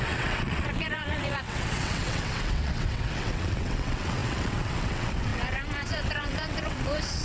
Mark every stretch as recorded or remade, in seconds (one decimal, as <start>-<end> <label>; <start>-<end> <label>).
0.0-7.2 remade